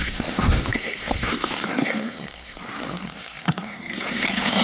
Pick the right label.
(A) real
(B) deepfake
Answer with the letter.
B